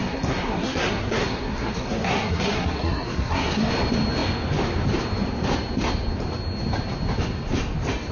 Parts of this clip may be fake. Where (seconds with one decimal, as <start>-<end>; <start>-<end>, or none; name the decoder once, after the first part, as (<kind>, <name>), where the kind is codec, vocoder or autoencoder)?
0.0-3.7 (codec, SNAC)